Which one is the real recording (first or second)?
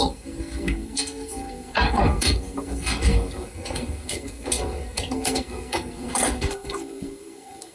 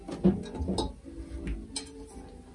second